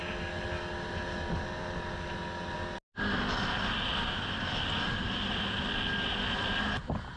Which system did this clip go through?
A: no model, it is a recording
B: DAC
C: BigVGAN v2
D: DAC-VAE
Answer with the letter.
A